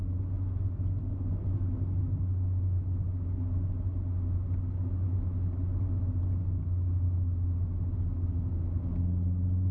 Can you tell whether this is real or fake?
real